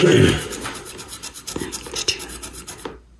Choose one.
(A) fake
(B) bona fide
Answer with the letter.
B